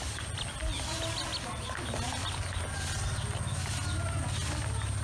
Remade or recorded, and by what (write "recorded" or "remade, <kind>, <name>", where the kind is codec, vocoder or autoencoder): recorded